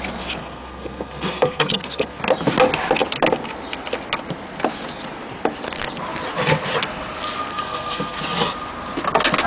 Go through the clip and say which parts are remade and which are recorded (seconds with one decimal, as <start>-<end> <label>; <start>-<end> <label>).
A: 0.0-0.4 recorded; 0.4-2.2 remade; 2.2-7.5 recorded; 7.5-8.2 remade; 8.2-9.5 recorded